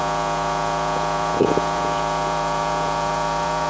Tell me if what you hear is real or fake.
fake